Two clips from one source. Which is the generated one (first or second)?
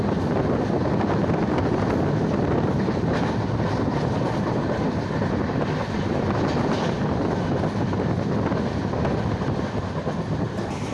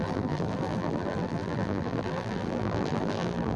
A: second